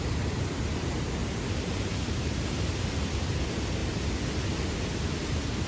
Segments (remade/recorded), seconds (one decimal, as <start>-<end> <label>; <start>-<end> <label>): 0.0-1.2 recorded; 1.2-2.5 remade; 2.5-5.7 recorded